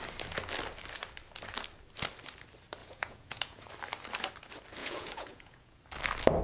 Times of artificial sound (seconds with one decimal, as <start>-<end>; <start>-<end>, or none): 2.8-3.7; 4.8-5.8

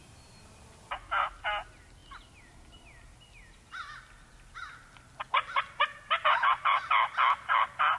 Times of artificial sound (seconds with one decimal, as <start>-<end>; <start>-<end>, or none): none

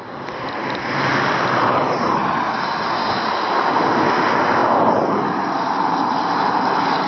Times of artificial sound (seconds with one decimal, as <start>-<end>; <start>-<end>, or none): 4.6-7.1

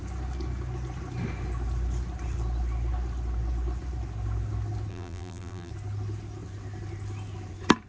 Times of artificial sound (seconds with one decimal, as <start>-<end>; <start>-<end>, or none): 4.9-5.7